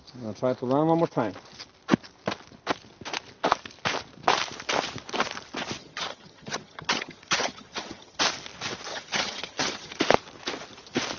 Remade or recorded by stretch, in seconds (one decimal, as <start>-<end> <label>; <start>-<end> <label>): 0.0-5.8 recorded; 5.8-8.2 remade; 8.2-8.9 recorded; 8.9-10.0 remade; 10.0-11.2 recorded